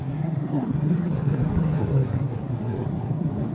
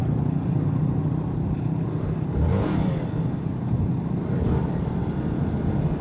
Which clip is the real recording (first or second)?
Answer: second